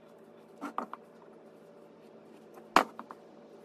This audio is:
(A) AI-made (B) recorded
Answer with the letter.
B